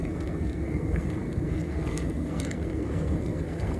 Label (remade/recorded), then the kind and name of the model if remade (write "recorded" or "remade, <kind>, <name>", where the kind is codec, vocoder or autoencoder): remade, codec, SNAC